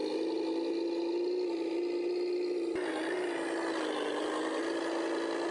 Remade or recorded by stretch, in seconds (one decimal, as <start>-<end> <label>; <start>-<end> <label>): 0.0-5.5 recorded